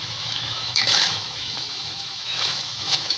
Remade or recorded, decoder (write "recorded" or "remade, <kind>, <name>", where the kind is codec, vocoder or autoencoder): remade, autoencoder, DAC-VAE